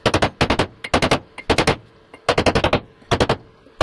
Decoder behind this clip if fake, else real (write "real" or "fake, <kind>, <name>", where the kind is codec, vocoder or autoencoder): real